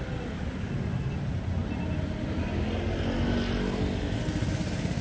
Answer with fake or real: real